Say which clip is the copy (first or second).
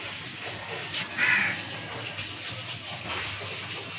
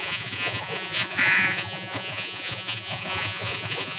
second